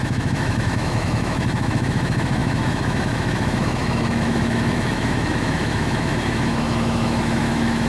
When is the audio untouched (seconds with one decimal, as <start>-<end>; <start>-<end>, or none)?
none